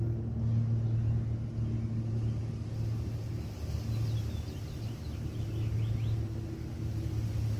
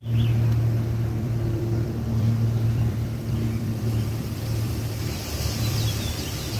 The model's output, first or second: second